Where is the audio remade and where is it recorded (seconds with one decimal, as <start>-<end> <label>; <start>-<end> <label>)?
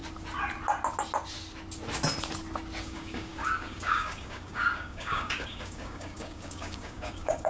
0.0-2.8 recorded; 2.8-7.5 remade